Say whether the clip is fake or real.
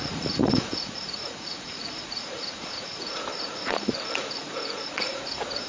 fake